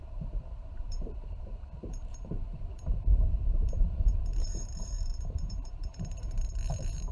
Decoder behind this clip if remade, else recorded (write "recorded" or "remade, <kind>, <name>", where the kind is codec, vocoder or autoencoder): remade, vocoder, BigVGAN v2